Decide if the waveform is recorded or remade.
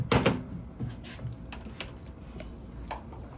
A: recorded